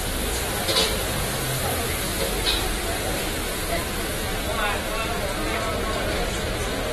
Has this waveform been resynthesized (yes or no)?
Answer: no